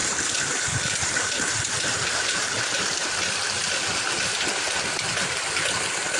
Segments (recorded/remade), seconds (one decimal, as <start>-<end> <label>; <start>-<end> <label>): 0.0-2.6 remade; 2.6-6.2 recorded